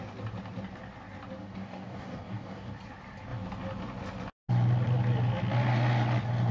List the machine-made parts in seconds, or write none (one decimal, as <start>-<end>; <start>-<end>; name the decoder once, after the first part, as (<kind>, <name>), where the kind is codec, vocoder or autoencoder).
1.4-2.7 (codec, DAC)